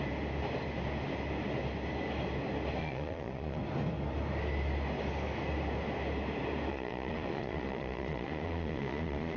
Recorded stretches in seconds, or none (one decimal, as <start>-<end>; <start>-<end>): 0.0-2.8; 3.6-6.7